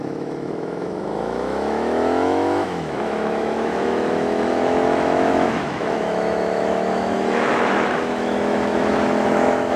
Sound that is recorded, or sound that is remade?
remade